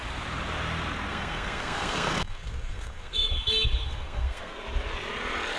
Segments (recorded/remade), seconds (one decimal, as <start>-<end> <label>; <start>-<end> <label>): 0.0-1.1 recorded; 1.1-4.5 remade; 4.5-5.6 recorded